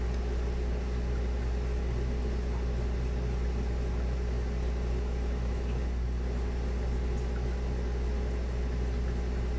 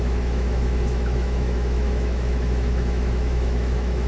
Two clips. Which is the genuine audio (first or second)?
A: first